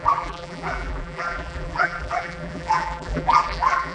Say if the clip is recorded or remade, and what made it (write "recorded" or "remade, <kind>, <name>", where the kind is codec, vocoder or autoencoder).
remade, vocoder, BigVGAN v2